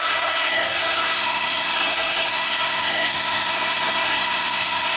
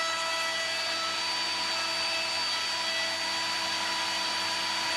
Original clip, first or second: second